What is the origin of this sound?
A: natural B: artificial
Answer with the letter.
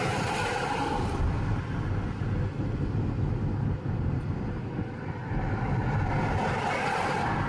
A